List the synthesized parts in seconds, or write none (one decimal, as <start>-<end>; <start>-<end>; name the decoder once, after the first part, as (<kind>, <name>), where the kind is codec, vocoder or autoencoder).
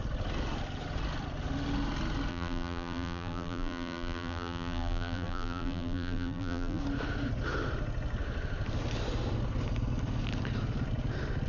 2.3-6.8 (vocoder, BigVGAN v2)